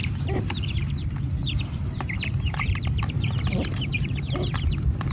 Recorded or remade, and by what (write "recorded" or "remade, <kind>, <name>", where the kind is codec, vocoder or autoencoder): remade, vocoder, BigVGAN v2